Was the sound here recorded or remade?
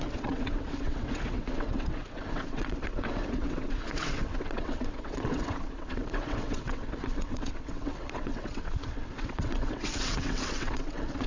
remade